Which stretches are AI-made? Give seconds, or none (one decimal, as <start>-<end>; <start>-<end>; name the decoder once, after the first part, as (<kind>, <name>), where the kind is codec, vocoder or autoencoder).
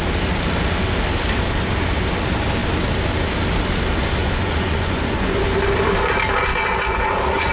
4.2-5.4 (vocoder, Vocos); 6.5-7.5